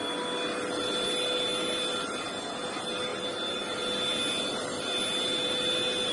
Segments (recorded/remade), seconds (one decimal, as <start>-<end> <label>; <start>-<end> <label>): 0.0-6.1 recorded